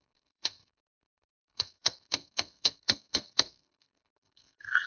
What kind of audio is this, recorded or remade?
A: remade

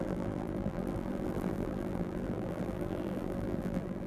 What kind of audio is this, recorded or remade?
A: remade